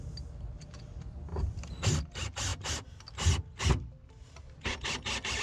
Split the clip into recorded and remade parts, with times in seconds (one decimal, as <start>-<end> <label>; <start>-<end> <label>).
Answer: 0.0-5.4 recorded